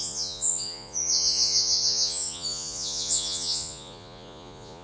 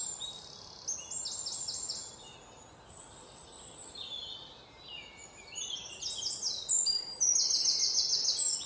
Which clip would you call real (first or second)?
second